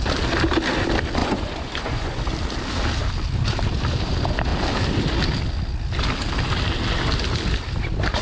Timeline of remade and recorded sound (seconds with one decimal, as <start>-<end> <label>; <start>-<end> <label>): 0.0-1.2 recorded; 1.2-2.2 remade; 2.2-8.2 recorded